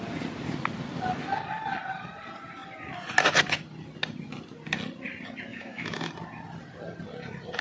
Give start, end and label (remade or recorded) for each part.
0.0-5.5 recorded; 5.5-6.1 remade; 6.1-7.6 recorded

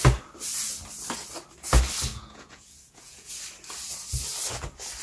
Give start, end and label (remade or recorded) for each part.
0.0-2.1 recorded; 2.1-3.3 remade; 3.3-5.0 recorded

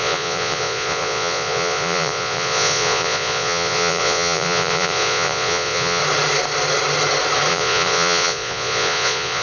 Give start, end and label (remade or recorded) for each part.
0.0-6.0 remade; 6.0-7.5 recorded; 7.5-9.4 remade

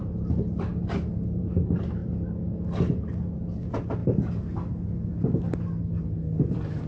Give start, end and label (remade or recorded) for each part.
0.0-6.9 recorded